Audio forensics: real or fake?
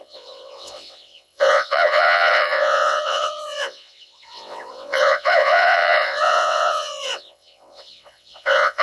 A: fake